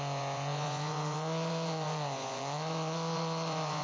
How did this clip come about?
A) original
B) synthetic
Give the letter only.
B